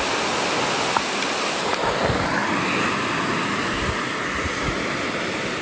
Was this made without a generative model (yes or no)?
yes